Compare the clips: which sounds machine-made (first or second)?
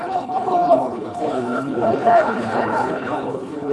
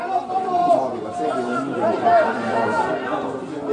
first